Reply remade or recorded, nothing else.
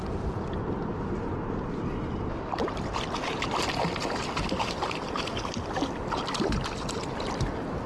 recorded